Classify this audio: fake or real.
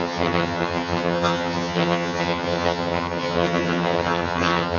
fake